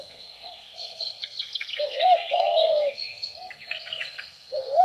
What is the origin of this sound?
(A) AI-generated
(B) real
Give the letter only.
A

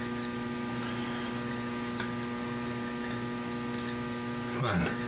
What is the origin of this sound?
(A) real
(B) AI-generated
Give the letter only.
A